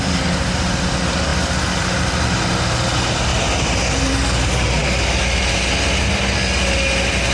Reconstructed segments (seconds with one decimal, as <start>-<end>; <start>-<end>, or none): none

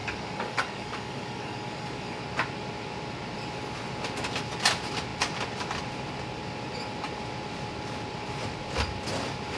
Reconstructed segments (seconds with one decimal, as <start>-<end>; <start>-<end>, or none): 0.0-2.2